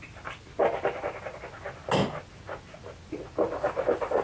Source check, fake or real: real